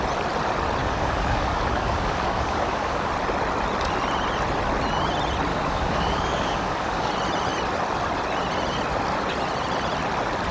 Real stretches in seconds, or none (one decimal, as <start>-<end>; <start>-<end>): 0.0-0.8; 3.1-5.5; 7.1-10.5